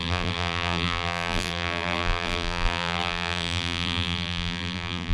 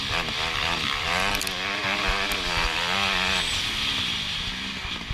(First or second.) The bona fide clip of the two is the second